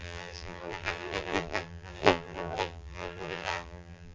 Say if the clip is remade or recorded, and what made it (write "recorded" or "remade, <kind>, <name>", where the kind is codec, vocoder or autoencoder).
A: remade, vocoder, BigVGAN v2